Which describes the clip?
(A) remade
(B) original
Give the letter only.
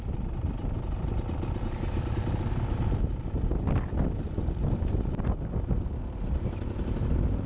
B